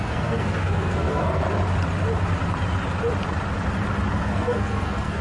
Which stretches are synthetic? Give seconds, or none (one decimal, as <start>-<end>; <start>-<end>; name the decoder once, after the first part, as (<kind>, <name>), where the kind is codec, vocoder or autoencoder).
0.0-1.4 (codec, SNAC); 4.2-5.2